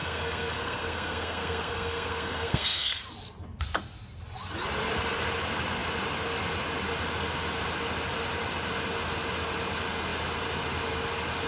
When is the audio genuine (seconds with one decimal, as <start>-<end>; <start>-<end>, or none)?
3.0-11.5